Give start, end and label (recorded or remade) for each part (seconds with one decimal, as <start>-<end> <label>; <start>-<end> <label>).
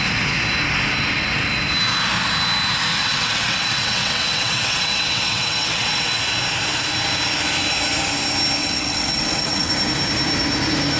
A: 0.0-3.0 recorded; 3.0-6.2 remade; 6.2-8.6 recorded; 8.6-9.7 remade; 9.7-11.0 recorded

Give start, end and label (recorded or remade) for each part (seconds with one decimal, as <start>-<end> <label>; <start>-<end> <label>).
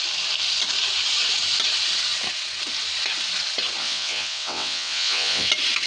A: 0.0-3.8 recorded; 3.8-5.5 remade; 5.5-5.9 recorded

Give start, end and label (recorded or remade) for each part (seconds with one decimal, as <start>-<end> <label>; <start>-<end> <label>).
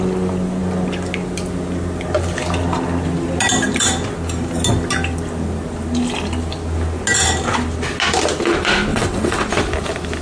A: 0.0-8.9 recorded; 8.9-9.5 remade; 9.5-10.2 recorded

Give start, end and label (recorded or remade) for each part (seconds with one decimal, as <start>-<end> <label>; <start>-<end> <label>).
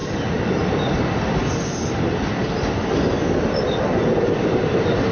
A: 0.0-5.1 recorded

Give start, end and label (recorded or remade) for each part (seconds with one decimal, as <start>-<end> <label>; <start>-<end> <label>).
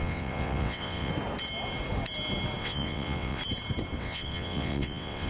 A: 0.0-1.1 remade; 1.1-2.6 recorded; 2.6-3.4 remade; 3.4-4.0 recorded; 4.0-5.3 remade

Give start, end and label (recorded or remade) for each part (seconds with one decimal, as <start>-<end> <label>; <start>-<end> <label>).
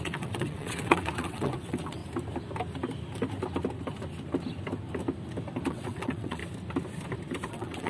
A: 0.0-2.0 remade; 2.0-5.7 recorded; 5.7-6.4 remade; 6.4-7.5 recorded; 7.5-7.9 remade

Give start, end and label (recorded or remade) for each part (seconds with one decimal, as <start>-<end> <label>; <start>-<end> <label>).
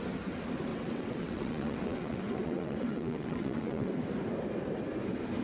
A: 0.0-0.7 recorded; 0.7-3.9 remade; 3.9-5.4 recorded